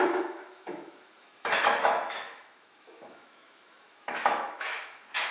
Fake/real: fake